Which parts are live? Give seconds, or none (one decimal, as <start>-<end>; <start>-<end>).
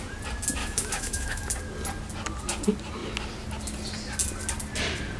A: 0.0-0.6; 1.5-5.2